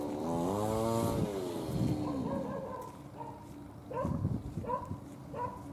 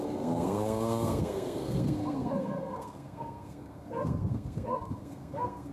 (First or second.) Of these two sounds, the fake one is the second